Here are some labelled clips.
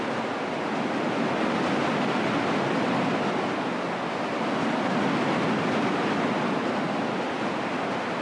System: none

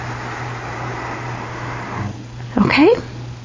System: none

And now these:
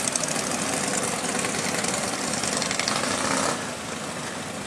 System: none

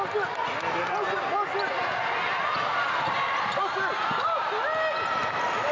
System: none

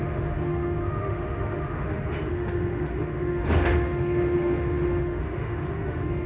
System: autoencoder, DAC-VAE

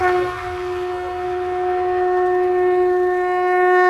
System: codec, SNAC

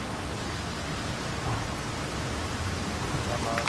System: none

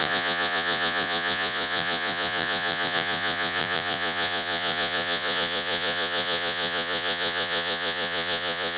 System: vocoder, Vocos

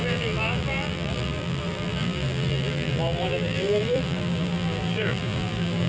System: vocoder, BigVGAN v2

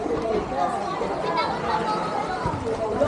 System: none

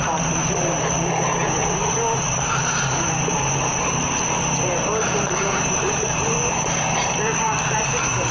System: vocoder, BigVGAN v2